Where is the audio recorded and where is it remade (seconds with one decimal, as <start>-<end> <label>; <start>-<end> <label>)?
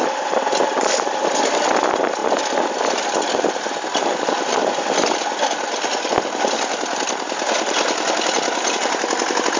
0.0-9.6 recorded